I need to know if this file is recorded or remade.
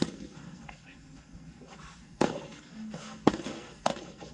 remade